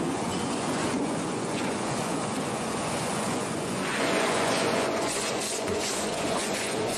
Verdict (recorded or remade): remade